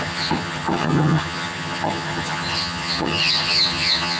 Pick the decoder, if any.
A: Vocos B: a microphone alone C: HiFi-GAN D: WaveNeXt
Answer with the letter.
C